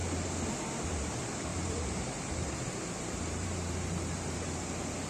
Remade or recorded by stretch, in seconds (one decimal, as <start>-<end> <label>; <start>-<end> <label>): 0.0-1.5 recorded; 1.5-4.6 remade; 4.6-5.1 recorded